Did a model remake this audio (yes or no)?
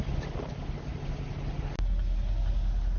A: no